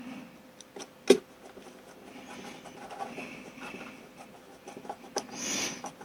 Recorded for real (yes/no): yes